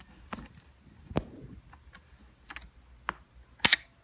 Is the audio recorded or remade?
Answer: recorded